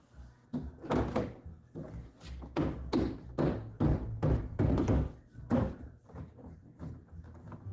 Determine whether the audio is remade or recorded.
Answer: recorded